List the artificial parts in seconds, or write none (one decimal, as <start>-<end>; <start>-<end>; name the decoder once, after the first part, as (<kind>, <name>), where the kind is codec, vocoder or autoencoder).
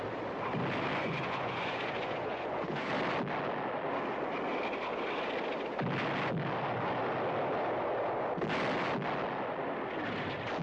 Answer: 1.0-2.9 (vocoder, Vocos)